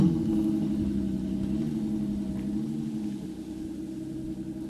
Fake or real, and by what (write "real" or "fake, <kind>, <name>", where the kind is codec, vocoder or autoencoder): real